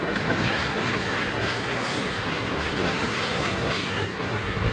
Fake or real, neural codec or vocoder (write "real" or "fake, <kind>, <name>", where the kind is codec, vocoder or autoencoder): fake, codec, SNAC